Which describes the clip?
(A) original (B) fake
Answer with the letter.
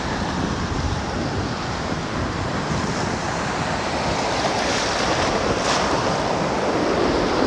B